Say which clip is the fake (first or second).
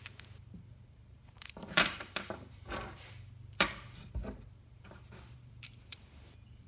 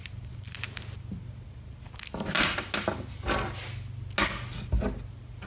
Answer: first